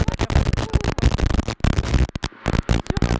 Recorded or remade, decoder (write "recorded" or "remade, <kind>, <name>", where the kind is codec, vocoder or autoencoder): recorded